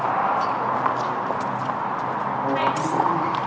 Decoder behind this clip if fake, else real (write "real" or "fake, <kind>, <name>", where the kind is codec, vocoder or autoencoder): real